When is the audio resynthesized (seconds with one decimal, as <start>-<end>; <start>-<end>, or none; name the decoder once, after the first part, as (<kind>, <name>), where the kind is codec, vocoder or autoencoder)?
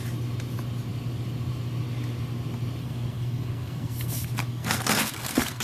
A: 2.8-5.6 (codec, SNAC)